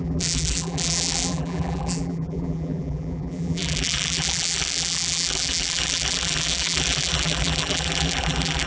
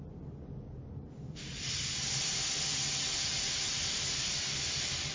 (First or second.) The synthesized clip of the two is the first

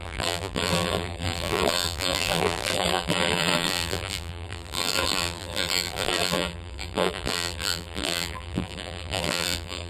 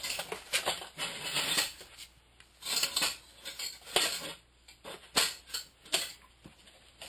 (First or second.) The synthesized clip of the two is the first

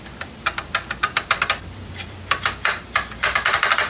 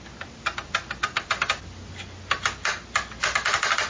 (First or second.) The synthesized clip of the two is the first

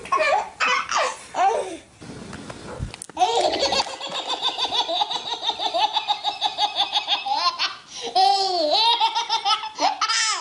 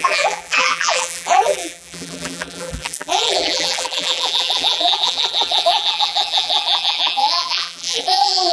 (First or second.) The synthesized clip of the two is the second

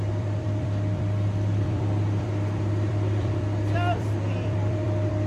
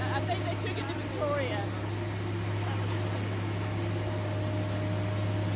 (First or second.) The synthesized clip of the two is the first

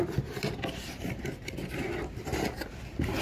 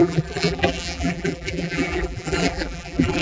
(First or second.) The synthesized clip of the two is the second